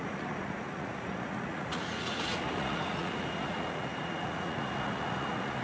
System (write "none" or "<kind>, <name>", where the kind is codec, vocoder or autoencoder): vocoder, Vocos